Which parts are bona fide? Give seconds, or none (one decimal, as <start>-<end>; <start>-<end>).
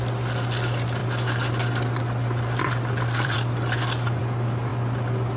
0.0-1.0; 4.2-4.7